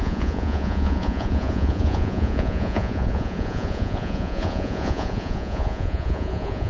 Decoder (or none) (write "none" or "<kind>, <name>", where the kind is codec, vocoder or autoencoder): vocoder, Vocos